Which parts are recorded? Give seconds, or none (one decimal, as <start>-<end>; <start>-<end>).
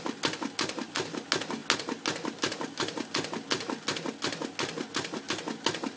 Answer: 0.0-6.0